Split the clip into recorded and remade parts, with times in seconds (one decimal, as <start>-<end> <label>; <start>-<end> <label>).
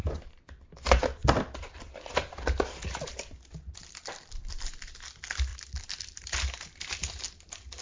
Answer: 0.0-0.6 remade; 0.6-1.2 recorded; 1.2-4.9 remade; 4.9-5.5 recorded; 5.5-6.2 remade; 6.2-7.8 recorded